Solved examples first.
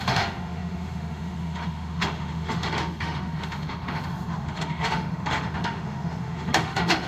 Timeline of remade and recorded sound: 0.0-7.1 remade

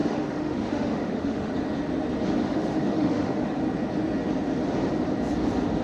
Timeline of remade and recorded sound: 0.0-1.5 remade; 1.5-2.4 recorded; 2.4-3.6 remade; 3.6-5.8 recorded

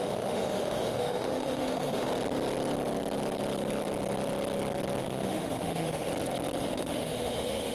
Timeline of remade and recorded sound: 0.0-2.1 remade; 2.1-5.0 recorded; 5.0-6.1 remade; 6.1-6.6 recorded; 6.6-7.7 remade

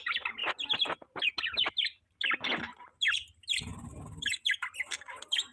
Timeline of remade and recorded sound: 0.0-5.5 recorded

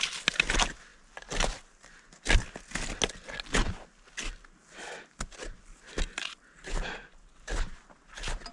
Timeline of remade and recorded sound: 0.0-8.5 recorded

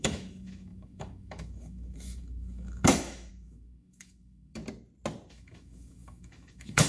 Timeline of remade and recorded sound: 0.0-4.6 remade; 4.6-5.3 recorded; 5.3-6.9 remade

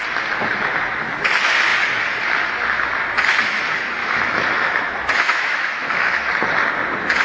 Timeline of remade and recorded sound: 0.0-4.0 recorded; 4.0-6.2 remade; 6.2-7.2 recorded